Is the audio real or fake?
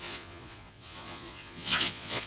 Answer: fake